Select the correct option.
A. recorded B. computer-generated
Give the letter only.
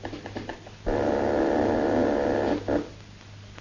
A